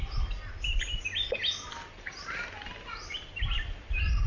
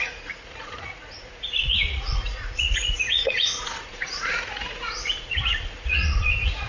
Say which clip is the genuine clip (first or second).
first